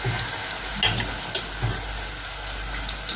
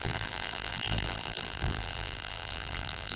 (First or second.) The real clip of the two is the first